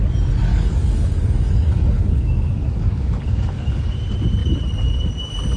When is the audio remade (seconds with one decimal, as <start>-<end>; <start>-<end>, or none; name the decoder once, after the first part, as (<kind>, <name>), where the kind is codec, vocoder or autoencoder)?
0.5-3.9 (codec, DAC)